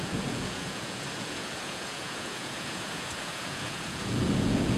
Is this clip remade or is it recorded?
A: remade